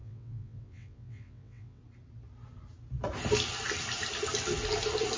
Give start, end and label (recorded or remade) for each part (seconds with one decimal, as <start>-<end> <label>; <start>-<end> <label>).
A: 0.0-1.8 remade; 1.8-5.2 recorded

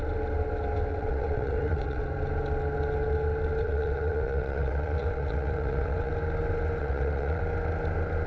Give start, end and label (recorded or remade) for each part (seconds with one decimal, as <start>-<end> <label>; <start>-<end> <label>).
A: 0.0-0.9 recorded; 0.9-2.0 remade; 2.0-3.6 recorded; 3.6-6.1 remade; 6.1-6.8 recorded; 6.8-7.4 remade; 7.4-8.3 recorded

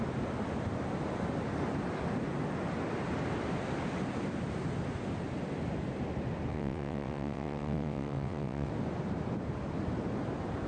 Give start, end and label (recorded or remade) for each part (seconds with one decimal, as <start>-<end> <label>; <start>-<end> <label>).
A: 0.0-6.5 recorded; 6.5-8.7 remade; 8.7-10.7 recorded

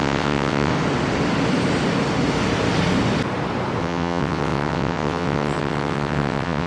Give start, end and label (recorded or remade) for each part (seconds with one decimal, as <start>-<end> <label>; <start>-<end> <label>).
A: 0.0-0.7 remade; 0.7-3.8 recorded; 3.8-6.7 remade

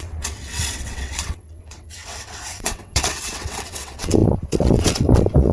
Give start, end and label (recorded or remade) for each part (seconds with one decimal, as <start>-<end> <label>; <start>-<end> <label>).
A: 0.0-5.5 remade

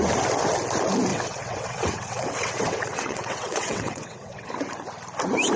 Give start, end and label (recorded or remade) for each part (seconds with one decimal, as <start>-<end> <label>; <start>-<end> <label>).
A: 0.0-1.1 recorded; 1.1-4.5 remade; 4.5-5.6 recorded